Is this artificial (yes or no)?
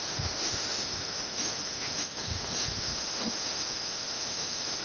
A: yes